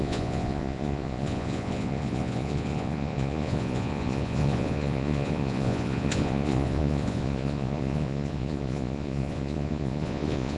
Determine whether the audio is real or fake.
fake